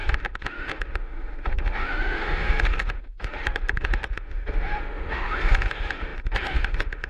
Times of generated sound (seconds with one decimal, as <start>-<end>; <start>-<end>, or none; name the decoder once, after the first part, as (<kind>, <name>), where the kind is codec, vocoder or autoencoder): 0.0-7.1 (autoencoder, DAC-VAE)